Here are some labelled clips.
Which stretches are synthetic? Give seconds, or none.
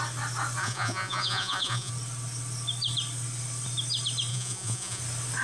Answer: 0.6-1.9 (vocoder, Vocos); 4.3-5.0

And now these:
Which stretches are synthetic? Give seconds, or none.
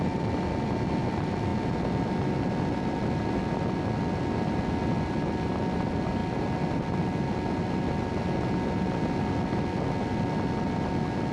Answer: none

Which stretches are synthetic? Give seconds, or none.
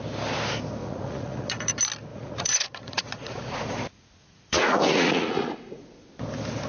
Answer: 0.8-1.6 (vocoder, Vocos); 2.1-6.1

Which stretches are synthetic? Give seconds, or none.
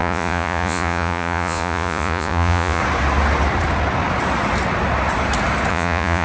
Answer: 0.0-2.8 (vocoder, Vocos); 5.7-6.2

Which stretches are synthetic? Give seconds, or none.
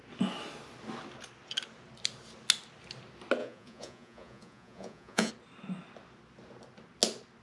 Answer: 3.4-5.3 (vocoder, Vocos)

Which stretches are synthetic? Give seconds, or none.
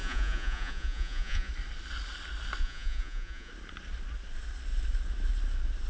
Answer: 0.0-1.5 (vocoder, Vocos); 2.6-3.5